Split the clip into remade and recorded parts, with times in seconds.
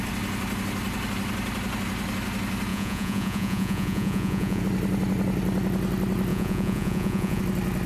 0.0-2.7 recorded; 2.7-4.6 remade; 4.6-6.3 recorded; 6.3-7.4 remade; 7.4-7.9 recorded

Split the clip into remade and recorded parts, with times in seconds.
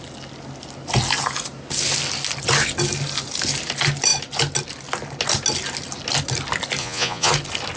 0.0-6.8 recorded; 6.8-7.3 remade; 7.3-7.8 recorded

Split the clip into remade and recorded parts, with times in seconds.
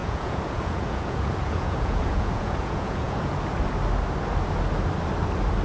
0.0-3.4 remade; 3.4-5.6 recorded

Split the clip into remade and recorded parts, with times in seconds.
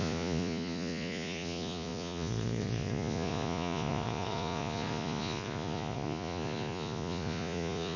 0.0-8.0 remade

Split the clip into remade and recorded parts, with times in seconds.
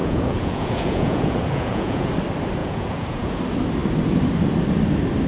0.0-2.1 remade; 2.1-2.6 recorded; 2.6-3.4 remade; 3.4-5.3 recorded